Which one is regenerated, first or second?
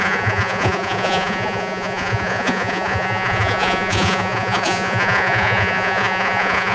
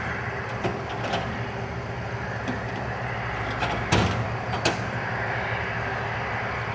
first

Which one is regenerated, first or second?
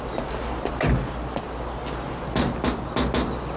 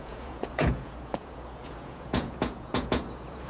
second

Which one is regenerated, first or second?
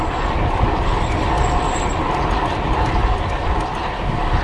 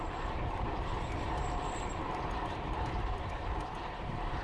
second